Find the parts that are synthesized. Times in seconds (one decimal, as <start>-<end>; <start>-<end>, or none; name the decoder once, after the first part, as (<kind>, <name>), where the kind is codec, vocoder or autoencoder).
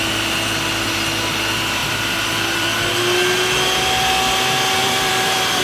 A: 1.8-3.0 (vocoder, BigVGAN v2); 4.8-5.6